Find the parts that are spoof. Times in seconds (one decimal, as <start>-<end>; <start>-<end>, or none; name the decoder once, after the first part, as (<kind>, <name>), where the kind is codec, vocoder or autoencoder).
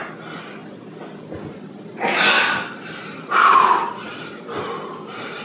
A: none